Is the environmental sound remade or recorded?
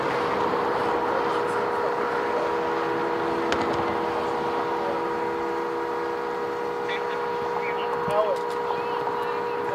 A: recorded